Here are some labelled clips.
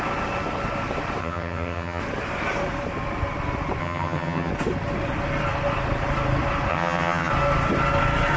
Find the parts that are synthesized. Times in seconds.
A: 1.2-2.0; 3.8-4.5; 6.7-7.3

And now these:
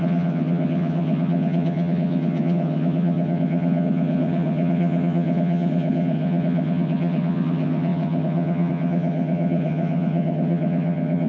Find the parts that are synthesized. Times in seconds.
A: 0.0-11.3

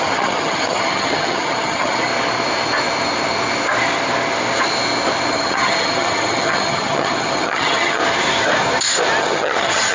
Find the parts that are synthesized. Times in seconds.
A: 0.0-2.1; 5.3-8.0; 9.2-9.9

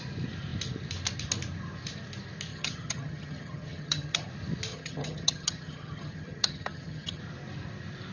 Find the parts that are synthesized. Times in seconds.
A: 2.5-4.3; 4.7-7.2

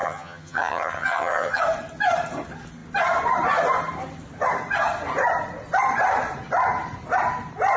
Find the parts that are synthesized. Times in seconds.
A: 0.0-1.6

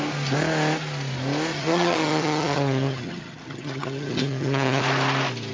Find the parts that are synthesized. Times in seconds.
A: 1.5-4.8

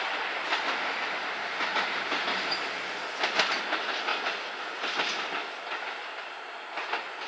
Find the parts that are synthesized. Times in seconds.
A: none

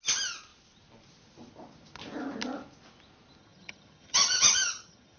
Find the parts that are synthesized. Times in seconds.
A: 3.4-5.2